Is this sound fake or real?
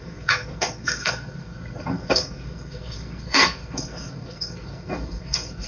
fake